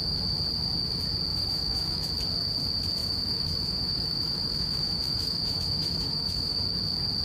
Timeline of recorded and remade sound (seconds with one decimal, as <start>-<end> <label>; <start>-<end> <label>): 0.0-1.3 recorded; 1.3-2.1 remade; 2.1-3.0 recorded; 3.0-6.6 remade; 6.6-7.2 recorded